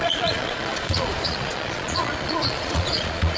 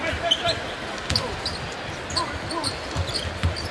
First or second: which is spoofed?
first